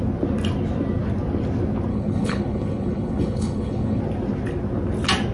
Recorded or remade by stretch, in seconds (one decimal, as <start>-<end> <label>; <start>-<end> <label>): 0.0-1.9 recorded; 1.9-4.0 remade; 4.0-5.3 recorded